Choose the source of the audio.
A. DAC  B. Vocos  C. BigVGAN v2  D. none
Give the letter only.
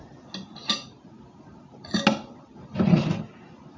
D